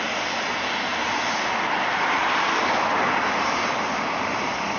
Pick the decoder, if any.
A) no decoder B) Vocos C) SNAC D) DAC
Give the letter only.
A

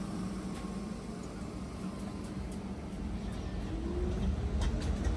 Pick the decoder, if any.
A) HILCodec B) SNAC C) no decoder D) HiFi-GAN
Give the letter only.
C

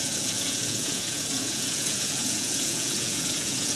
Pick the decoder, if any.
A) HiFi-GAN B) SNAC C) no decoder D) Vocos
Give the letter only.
D